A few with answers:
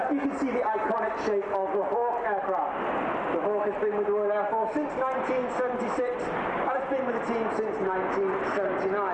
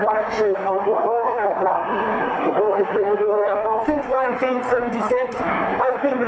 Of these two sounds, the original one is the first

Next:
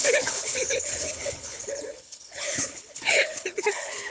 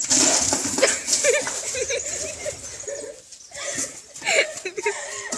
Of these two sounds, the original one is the second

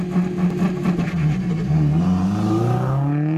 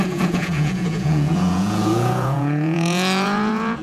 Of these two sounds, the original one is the first